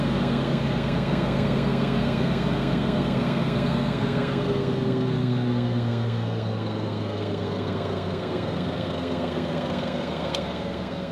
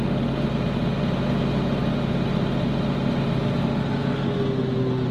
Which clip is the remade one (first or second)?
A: first